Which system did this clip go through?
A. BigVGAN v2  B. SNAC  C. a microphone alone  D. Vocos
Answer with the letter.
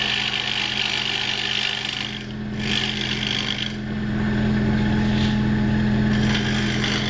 C